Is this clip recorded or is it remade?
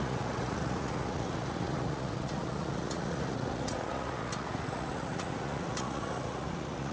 remade